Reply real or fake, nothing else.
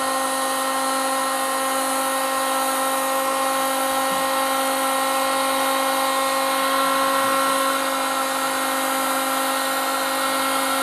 real